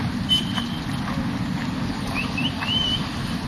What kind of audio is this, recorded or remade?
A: recorded